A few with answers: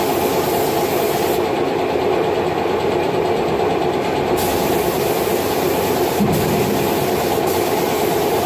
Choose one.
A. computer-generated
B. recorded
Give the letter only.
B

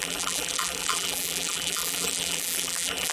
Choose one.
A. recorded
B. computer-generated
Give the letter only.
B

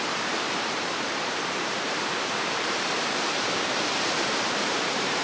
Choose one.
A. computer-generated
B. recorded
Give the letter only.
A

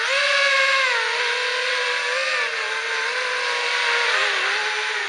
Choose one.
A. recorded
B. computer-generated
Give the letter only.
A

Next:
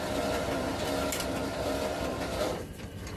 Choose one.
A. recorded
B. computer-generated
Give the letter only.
B